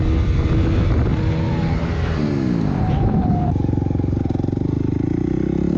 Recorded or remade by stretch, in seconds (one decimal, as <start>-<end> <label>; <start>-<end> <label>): 0.0-3.2 recorded; 3.2-4.2 remade; 4.2-5.8 recorded